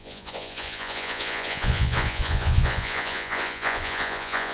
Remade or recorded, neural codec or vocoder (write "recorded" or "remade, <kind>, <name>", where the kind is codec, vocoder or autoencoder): remade, vocoder, Vocos